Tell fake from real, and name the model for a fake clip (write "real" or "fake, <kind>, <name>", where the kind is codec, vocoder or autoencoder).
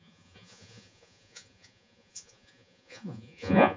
fake, vocoder, Vocos